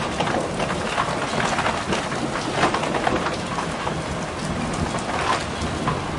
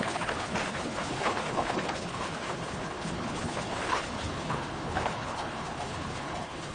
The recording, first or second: first